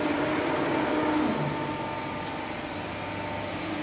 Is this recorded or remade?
recorded